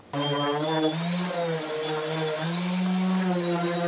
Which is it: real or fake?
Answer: real